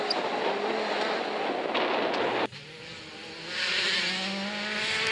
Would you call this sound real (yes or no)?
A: yes